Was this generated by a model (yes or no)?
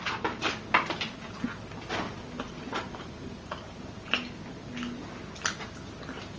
no